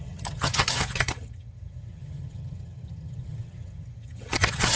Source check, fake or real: fake